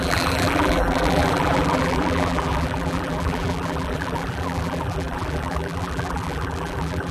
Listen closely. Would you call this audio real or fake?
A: fake